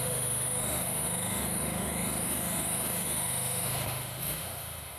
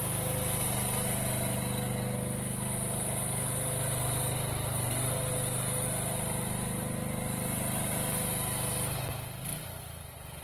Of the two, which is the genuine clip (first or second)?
second